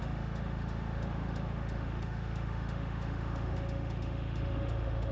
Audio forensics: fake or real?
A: fake